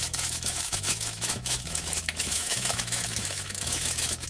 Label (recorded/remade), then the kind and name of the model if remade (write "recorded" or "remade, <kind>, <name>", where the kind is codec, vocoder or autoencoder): remade, autoencoder, DAC-VAE